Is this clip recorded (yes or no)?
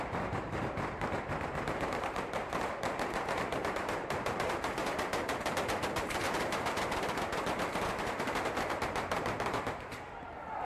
no